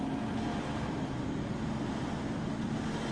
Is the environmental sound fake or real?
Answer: real